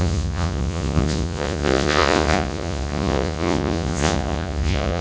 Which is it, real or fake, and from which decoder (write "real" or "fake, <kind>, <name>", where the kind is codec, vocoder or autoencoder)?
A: fake, vocoder, Vocos